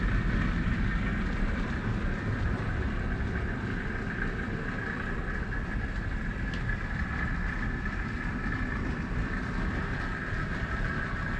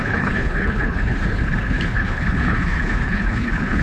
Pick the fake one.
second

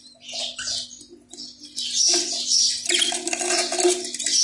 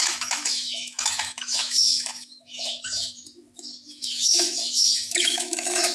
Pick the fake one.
second